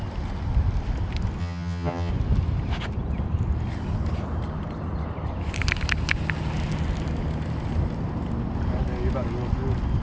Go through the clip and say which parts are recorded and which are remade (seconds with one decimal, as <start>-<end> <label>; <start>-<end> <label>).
0.0-1.4 recorded; 1.4-2.1 remade; 2.1-10.0 recorded